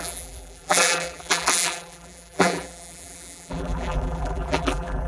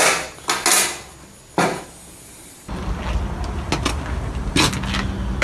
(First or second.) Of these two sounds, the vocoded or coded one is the first